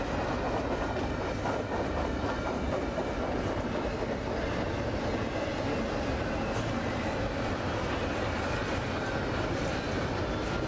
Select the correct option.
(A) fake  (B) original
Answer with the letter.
B